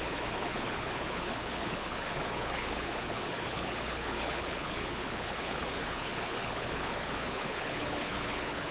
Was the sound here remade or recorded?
remade